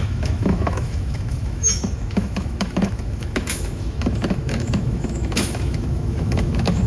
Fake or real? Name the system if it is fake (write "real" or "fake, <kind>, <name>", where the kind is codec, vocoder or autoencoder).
fake, autoencoder, DAC-VAE